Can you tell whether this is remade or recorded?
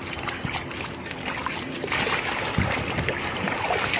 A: recorded